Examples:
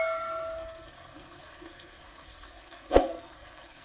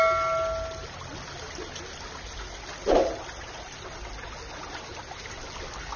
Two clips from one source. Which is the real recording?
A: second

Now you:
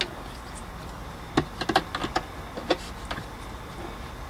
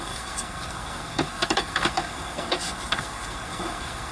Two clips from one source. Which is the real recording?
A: first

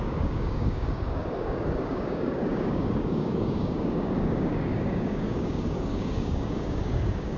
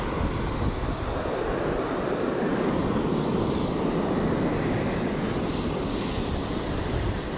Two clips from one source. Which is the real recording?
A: second